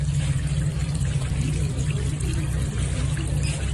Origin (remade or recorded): recorded